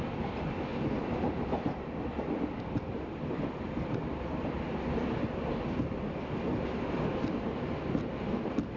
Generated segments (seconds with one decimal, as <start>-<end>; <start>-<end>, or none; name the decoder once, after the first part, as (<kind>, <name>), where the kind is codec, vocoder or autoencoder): 0.0-0.7 (vocoder, BigVGAN v2); 1.3-8.8